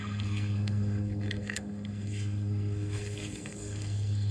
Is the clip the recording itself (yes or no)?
no